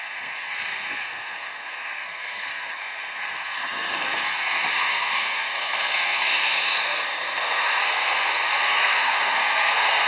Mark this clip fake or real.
fake